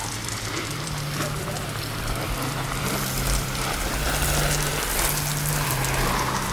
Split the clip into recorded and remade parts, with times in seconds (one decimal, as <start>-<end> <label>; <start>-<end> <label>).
0.0-3.9 remade; 3.9-6.5 recorded